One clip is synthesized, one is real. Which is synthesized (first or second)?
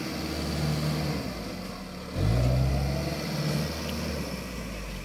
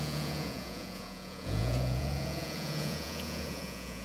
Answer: second